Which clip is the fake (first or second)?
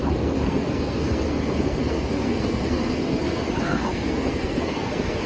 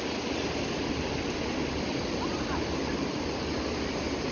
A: first